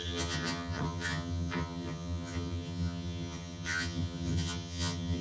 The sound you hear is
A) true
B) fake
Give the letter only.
B